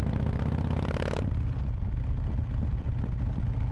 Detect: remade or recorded remade